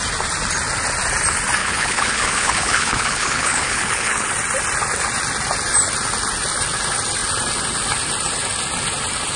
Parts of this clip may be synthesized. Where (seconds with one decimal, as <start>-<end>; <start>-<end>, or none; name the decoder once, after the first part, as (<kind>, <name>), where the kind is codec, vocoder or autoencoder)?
1.6-4.3 (codec, HILCodec)